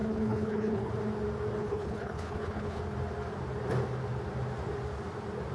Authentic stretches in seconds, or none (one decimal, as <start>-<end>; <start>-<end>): 0.9-1.6; 2.8-5.5